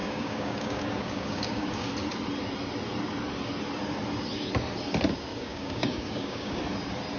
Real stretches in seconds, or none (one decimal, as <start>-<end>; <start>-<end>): 1.9-5.3; 6.6-7.2